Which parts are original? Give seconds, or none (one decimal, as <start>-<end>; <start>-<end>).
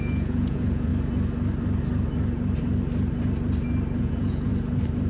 0.9-4.0; 4.5-5.1